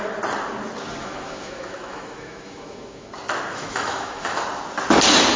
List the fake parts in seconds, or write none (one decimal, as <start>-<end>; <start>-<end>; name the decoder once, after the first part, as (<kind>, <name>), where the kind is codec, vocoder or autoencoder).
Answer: 1.0-3.1 (autoencoder, DAC-VAE); 3.5-4.4

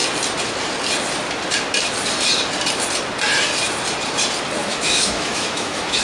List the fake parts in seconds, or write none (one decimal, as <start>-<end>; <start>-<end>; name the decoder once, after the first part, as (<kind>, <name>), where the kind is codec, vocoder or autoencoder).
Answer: 4.6-6.0 (autoencoder, DAC-VAE)

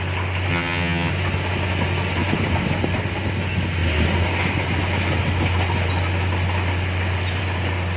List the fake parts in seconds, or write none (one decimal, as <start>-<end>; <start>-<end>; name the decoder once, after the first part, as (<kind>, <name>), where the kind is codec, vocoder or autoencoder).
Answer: 0.5-1.1 (vocoder, HiFi-GAN)

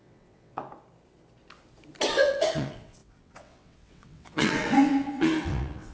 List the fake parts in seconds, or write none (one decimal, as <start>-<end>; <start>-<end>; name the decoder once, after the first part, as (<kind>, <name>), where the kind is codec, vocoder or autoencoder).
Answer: 0.0-0.6 (vocoder, WaveNeXt); 2.1-5.9

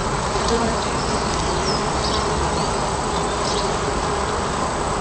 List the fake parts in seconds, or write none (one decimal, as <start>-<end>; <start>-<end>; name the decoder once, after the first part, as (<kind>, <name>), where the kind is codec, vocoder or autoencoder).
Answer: 0.0-1.3 (vocoder, Vocos); 2.6-3.9

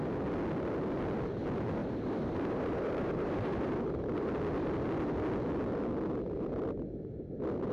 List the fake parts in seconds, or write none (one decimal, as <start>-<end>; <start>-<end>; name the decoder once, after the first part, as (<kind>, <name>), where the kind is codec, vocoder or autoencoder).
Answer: 1.8-4.3 (vocoder, BigVGAN v2)

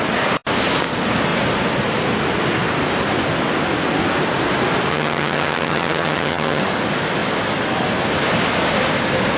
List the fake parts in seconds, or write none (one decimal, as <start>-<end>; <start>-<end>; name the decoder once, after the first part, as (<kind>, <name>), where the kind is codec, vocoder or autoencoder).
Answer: 4.9-6.6 (vocoder, HiFi-GAN)

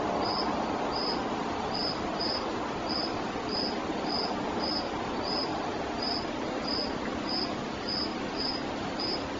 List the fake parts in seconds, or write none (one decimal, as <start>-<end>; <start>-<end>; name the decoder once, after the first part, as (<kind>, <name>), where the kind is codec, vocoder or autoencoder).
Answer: 1.8-3.9 (vocoder, BigVGAN v2); 5.5-7.1